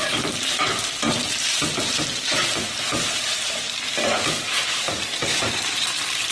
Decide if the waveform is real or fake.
fake